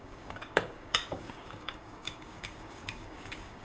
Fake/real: fake